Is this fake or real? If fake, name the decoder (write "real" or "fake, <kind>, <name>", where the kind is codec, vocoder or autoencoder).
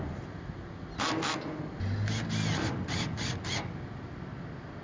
real